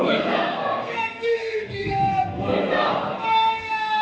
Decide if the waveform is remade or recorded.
remade